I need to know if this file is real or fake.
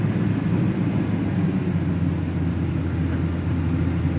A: real